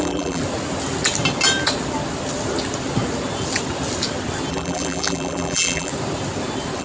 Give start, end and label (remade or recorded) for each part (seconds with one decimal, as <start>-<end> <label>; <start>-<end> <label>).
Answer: 0.0-0.4 remade; 0.4-4.5 recorded; 4.5-5.9 remade; 5.9-6.8 recorded